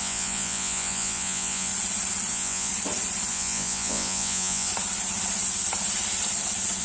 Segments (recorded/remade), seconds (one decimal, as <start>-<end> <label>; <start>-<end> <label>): 0.0-1.7 remade; 1.7-2.3 recorded; 2.3-2.7 remade; 2.7-3.3 recorded; 3.3-4.7 remade; 4.7-6.8 recorded